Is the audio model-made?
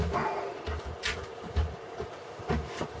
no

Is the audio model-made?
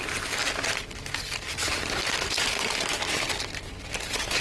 no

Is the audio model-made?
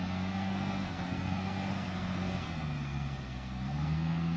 yes